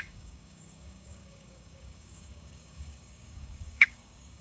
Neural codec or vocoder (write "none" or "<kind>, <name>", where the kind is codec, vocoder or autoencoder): codec, DAC